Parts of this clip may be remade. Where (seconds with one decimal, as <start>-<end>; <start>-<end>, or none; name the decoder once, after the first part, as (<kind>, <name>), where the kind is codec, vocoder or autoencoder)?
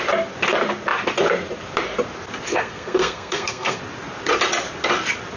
2.5-3.8 (codec, SNAC)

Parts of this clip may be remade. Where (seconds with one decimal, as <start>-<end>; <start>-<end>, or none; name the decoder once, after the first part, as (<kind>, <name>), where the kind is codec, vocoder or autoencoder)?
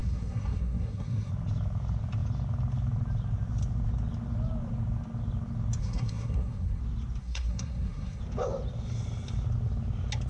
0.0-1.3 (codec, SNAC); 5.8-6.8; 7.2-8.2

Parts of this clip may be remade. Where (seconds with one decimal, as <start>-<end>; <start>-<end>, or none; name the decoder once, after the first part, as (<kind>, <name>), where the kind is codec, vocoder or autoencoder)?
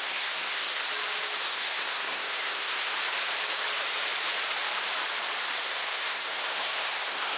0.0-0.8 (codec, SNAC); 1.4-2.9; 5.6-7.4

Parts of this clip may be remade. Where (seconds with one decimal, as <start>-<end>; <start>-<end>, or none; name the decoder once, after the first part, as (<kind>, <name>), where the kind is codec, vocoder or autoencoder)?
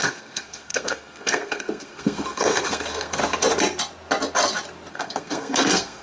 0.0-3.2 (codec, SNAC); 4.9-6.0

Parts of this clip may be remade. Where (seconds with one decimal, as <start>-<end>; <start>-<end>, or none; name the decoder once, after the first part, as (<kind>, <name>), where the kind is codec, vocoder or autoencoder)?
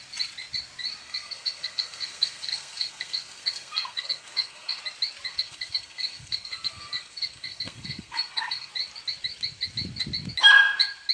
1.0-4.8 (codec, SNAC); 5.3-8.7